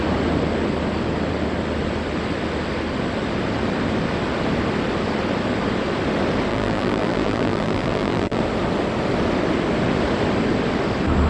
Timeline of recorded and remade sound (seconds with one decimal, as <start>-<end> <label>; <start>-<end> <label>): 0.0-6.5 recorded; 6.5-8.4 remade; 8.4-11.3 recorded